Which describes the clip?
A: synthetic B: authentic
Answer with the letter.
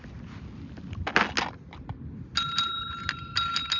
B